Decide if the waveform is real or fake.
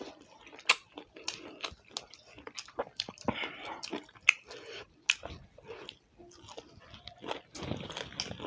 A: real